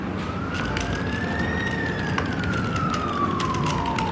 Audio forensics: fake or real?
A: real